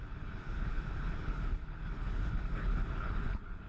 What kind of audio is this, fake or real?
fake